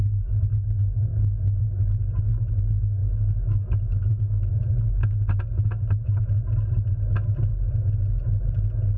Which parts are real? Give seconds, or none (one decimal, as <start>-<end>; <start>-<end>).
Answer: 0.0-1.1; 1.6-3.0; 4.2-9.0